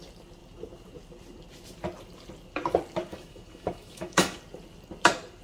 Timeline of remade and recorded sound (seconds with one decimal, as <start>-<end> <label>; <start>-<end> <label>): 0.0-3.1 recorded; 3.1-4.4 remade; 4.4-5.4 recorded